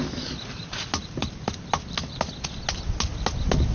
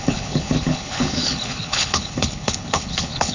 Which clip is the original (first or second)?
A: first